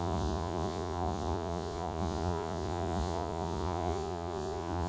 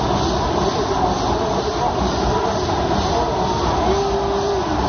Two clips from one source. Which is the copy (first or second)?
first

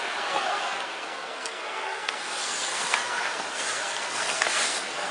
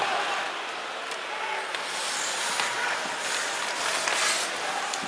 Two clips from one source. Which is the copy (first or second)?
first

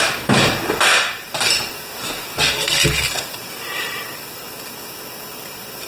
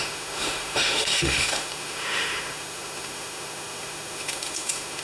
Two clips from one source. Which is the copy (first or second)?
second